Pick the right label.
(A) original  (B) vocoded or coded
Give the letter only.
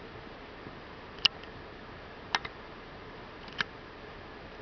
A